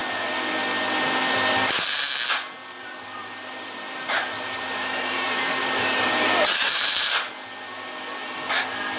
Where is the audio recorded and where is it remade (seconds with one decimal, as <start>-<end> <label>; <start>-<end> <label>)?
0.0-3.2 recorded; 3.2-7.3 remade; 7.3-9.0 recorded